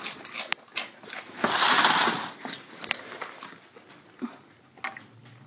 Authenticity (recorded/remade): recorded